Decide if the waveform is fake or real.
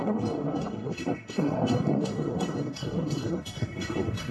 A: fake